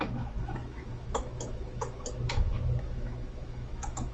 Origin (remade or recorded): remade